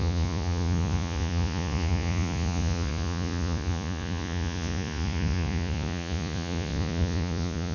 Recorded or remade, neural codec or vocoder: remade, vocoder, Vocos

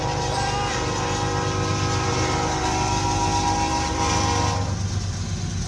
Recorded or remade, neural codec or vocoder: recorded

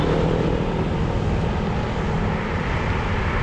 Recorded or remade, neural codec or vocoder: recorded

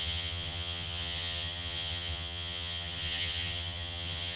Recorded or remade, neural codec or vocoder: remade, vocoder, HiFi-GAN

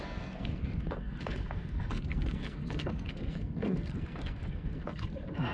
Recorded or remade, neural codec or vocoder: remade, codec, SNAC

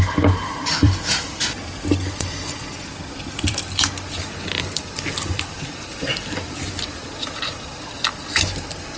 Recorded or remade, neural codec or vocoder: remade, vocoder, BigVGAN v2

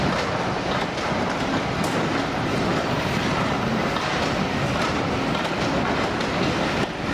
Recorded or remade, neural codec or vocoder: recorded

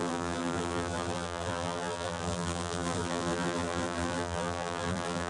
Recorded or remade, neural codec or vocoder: remade, vocoder, BigVGAN v2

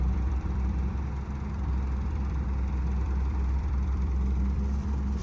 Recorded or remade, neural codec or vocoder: remade, vocoder, BigVGAN v2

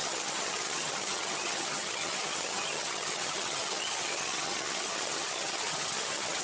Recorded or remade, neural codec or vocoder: remade, vocoder, HiFi-GAN